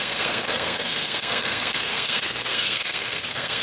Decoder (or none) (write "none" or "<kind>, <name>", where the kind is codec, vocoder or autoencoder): codec, SNAC